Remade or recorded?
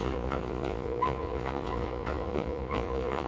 remade